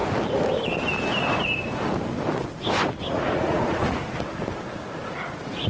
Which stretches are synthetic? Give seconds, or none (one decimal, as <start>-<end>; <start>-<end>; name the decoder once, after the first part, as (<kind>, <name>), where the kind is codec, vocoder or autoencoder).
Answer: 3.1-4.3 (vocoder, Vocos); 5.1-5.7